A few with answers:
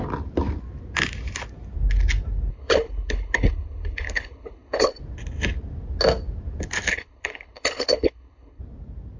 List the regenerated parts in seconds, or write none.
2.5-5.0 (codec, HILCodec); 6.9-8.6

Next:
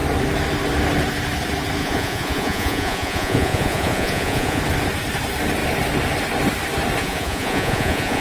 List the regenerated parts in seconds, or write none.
1.8-4.6 (vocoder, Vocos); 7.0-8.2

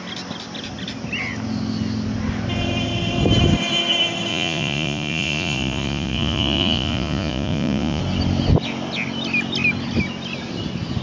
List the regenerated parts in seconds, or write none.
4.3-8.0 (vocoder, Vocos)

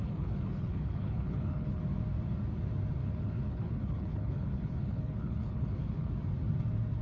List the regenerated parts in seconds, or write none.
0.0-1.8 (codec, HILCodec); 3.0-6.1